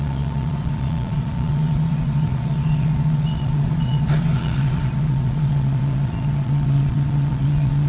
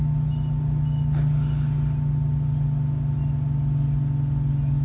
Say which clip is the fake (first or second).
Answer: first